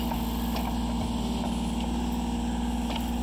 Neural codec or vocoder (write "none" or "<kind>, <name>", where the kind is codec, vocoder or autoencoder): none